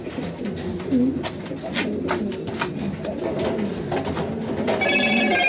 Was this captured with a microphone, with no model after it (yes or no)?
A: yes